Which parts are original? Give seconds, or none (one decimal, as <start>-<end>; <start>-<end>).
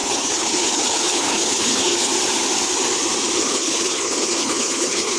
2.1-3.4